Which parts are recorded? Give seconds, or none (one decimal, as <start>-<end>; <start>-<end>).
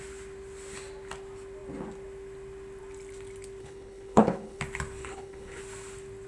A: 0.0-3.6; 4.6-5.0; 5.6-6.3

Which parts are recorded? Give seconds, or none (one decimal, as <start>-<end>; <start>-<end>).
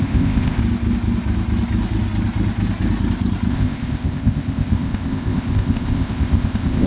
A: 0.6-3.5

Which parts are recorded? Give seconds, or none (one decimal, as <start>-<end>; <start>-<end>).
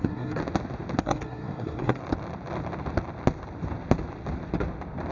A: 0.4-1.0; 2.0-5.1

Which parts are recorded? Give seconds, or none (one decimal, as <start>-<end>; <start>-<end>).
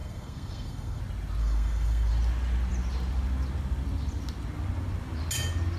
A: 1.0-1.4; 2.1-5.8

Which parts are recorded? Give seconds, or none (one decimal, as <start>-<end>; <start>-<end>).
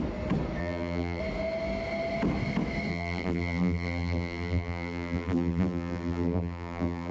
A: 0.0-0.6; 1.2-2.9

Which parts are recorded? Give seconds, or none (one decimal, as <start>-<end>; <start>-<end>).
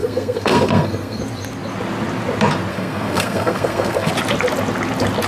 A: 1.2-2.7; 4.1-5.3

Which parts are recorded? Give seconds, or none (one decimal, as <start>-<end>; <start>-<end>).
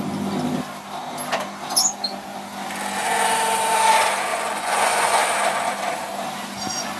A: 0.0-4.3; 5.2-7.0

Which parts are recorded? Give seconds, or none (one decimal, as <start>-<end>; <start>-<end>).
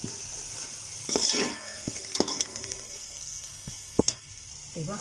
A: 0.0-1.5; 4.5-5.0